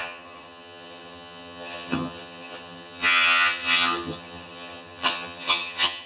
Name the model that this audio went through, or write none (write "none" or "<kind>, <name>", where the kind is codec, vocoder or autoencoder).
vocoder, HiFi-GAN